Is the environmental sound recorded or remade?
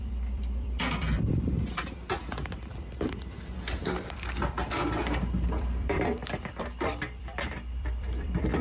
remade